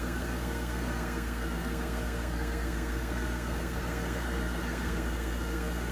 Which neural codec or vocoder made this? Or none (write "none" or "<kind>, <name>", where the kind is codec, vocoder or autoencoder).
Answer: codec, SNAC